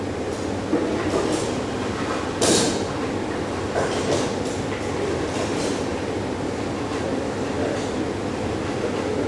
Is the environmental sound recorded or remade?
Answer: recorded